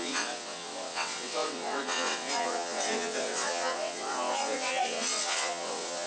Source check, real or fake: fake